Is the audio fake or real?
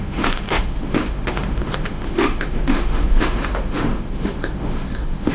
fake